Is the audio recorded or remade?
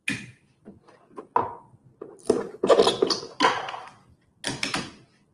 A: recorded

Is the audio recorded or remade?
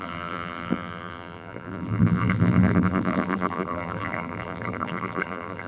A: remade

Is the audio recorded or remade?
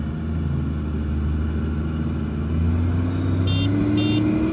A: recorded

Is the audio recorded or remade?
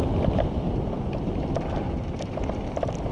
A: remade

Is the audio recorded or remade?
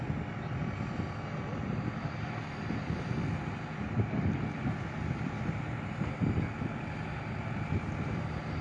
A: recorded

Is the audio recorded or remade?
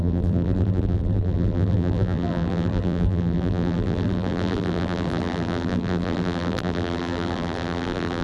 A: remade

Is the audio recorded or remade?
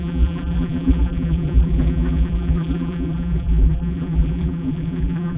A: remade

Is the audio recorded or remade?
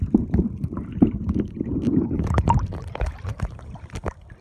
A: remade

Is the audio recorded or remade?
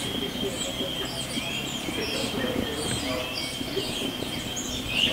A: recorded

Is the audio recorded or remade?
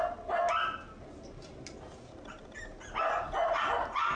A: recorded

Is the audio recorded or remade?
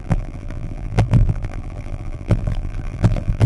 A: remade